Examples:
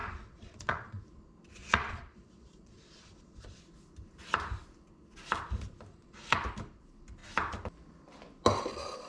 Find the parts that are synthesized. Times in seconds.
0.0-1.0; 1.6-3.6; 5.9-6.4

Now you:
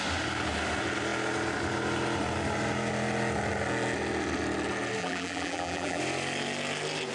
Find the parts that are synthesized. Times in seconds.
5.0-6.0

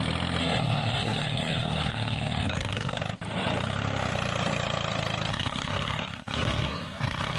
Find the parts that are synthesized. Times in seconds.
0.4-3.0; 5.3-7.4

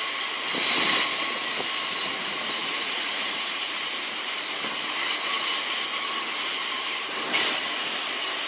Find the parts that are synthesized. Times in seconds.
2.1-3.8